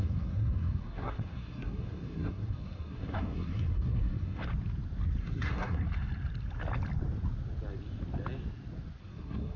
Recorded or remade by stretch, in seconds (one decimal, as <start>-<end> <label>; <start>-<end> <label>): 0.0-4.4 remade; 4.4-5.2 recorded; 5.2-5.8 remade; 5.8-9.0 recorded; 9.0-9.6 remade